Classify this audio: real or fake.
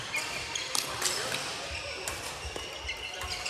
real